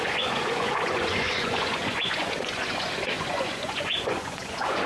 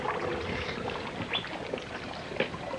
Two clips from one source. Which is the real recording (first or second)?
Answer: second